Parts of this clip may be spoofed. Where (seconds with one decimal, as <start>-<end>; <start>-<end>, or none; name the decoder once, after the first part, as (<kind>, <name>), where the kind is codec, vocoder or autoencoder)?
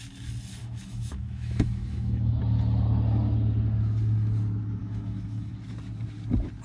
0.6-2.4 (autoencoder, DAC-VAE); 4.8-5.5